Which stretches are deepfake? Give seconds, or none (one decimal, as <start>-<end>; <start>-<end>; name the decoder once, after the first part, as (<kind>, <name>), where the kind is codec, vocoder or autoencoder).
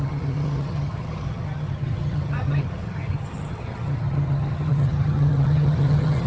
0.0-6.3 (vocoder, HiFi-GAN)